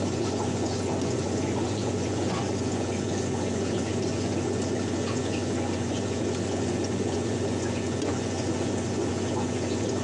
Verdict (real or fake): fake